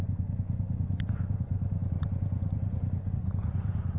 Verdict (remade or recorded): remade